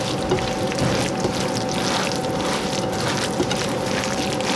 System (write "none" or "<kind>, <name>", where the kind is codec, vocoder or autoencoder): none